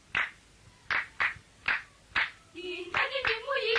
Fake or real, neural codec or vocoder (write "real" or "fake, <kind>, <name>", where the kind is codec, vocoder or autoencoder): real